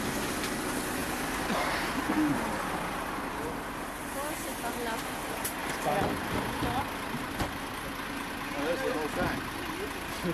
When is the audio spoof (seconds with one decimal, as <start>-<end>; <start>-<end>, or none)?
none